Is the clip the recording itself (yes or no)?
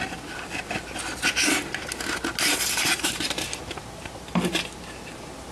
yes